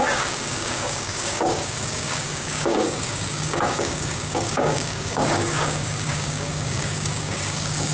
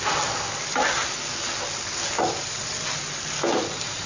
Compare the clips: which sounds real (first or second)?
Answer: second